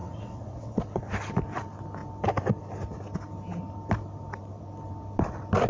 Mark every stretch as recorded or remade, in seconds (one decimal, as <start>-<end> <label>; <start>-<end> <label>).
0.0-0.8 remade; 0.8-5.7 recorded